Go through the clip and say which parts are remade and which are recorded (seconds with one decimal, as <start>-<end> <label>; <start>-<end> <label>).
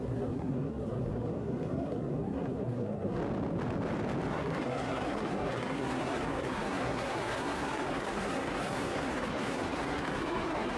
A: 0.0-3.2 remade; 3.2-4.3 recorded; 4.3-10.8 remade